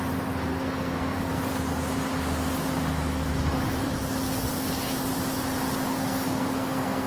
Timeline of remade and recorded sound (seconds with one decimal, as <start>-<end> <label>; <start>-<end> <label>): 0.0-0.5 recorded; 0.5-1.4 remade; 1.4-5.9 recorded; 5.9-7.1 remade